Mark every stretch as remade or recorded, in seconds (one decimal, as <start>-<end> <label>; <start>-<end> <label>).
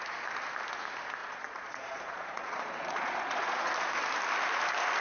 0.0-1.2 recorded; 1.2-3.7 remade; 3.7-5.0 recorded